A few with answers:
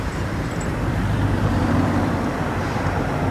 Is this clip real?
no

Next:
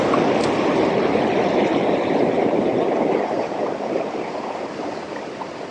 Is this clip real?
no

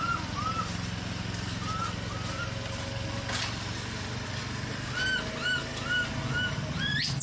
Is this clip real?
yes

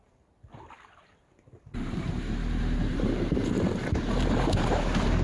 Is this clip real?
no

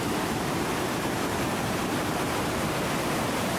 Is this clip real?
no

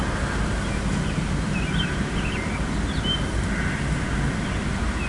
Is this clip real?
yes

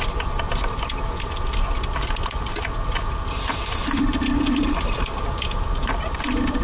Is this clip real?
no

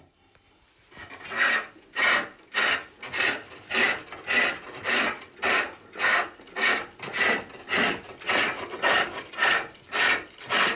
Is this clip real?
yes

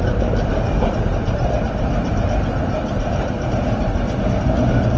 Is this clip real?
no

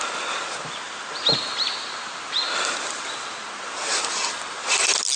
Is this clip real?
yes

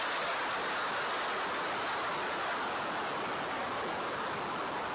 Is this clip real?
yes